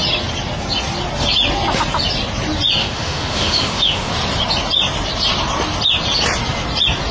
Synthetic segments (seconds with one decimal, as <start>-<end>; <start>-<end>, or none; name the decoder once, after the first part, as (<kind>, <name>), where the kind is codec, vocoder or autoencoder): 2.8-4.1 (autoencoder, DAC-VAE)